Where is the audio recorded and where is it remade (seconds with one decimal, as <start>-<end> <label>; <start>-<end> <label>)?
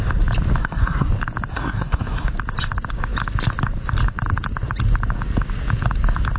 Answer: 0.0-0.6 recorded; 0.6-1.1 remade; 1.1-1.5 recorded; 1.5-2.3 remade; 2.3-6.4 recorded